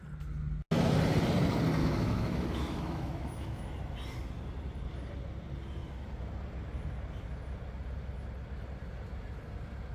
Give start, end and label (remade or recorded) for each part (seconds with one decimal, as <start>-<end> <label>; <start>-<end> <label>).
0.0-1.8 recorded; 1.8-3.6 remade; 3.6-9.9 recorded